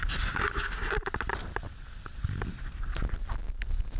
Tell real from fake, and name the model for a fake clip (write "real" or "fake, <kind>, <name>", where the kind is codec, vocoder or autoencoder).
real